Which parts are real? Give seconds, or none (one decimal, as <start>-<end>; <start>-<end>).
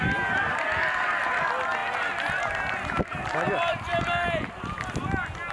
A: 0.0-5.5